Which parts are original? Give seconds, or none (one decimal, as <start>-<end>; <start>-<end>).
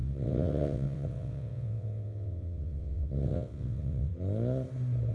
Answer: 4.1-5.1